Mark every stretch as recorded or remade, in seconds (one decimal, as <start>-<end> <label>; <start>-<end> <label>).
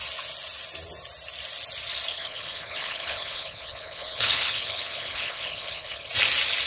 0.0-2.1 recorded; 2.1-6.1 remade; 6.1-6.7 recorded